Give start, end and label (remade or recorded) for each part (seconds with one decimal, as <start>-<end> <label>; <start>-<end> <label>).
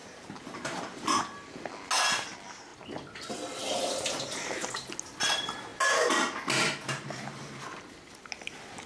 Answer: 0.0-1.2 remade; 1.2-8.9 recorded